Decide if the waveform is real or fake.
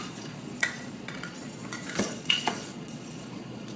fake